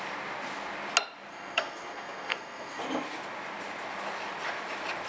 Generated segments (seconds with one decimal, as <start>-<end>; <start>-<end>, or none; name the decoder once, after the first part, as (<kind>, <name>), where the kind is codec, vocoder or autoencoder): 1.3-2.8 (codec, SNAC)